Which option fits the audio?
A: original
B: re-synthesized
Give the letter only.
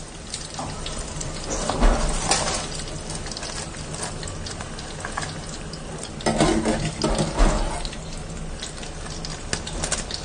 A